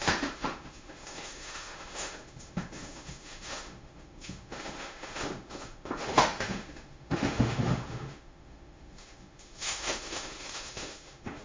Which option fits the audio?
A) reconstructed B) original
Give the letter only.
A